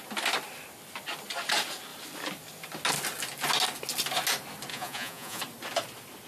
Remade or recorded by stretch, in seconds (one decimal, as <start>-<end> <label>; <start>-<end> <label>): 0.0-4.7 recorded; 4.7-5.4 remade; 5.4-6.3 recorded